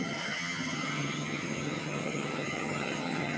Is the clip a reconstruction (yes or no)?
yes